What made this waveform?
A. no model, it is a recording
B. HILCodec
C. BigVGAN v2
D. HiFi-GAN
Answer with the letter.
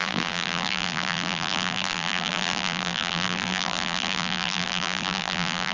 C